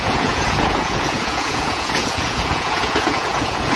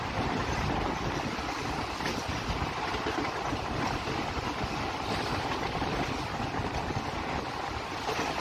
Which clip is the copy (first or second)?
first